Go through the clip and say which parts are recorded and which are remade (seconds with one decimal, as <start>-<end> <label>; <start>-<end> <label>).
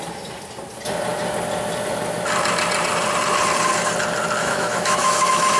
0.0-4.4 recorded; 4.4-5.6 remade